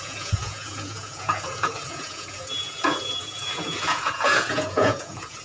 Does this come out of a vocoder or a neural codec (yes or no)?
yes